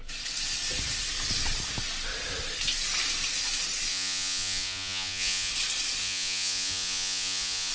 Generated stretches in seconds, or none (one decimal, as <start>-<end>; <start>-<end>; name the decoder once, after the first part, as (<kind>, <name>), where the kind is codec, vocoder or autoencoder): 3.9-5.5 (vocoder, Vocos); 6.0-7.7